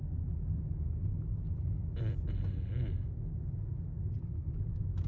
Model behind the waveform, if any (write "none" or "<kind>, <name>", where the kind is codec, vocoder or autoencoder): none